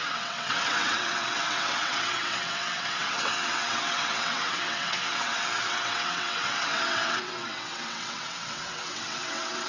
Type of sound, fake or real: fake